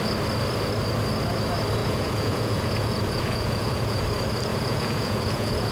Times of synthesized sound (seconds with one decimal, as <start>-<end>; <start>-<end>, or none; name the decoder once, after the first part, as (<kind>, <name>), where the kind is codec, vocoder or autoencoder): 1.8-4.0 (vocoder, Vocos); 4.5-5.7